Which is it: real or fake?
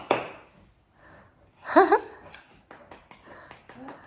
real